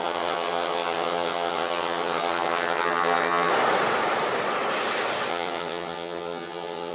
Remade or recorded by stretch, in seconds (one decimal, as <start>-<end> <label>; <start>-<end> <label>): 0.0-3.5 remade; 3.5-5.3 recorded; 5.3-6.9 remade